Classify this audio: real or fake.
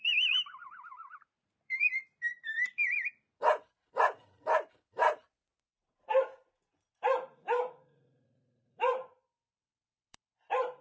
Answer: fake